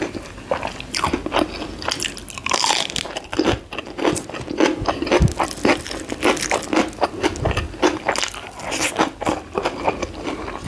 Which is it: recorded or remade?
recorded